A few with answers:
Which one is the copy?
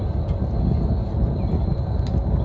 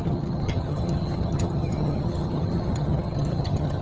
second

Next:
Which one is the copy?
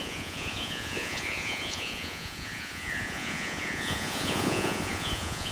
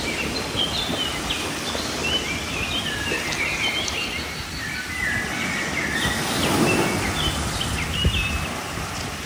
first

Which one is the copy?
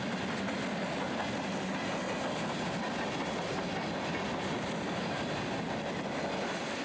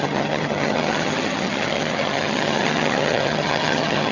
second